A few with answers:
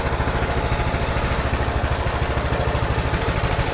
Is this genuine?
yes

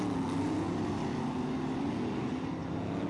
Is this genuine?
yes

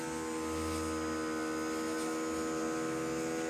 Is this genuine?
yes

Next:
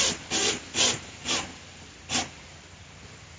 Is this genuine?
yes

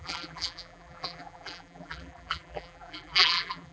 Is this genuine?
no